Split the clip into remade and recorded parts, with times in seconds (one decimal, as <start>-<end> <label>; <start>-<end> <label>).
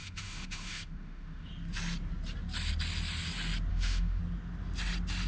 0.0-1.5 remade; 1.5-3.7 recorded; 3.7-4.2 remade; 4.2-5.3 recorded